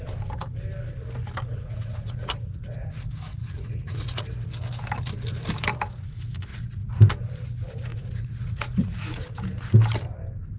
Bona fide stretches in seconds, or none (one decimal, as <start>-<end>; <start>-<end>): 0.0-1.5; 2.3-3.3; 4.2-6.5; 7.1-7.9; 9.2-10.6